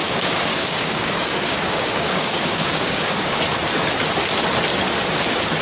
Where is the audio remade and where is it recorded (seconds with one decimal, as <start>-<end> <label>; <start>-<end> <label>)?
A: 0.0-3.4 remade; 3.4-5.6 recorded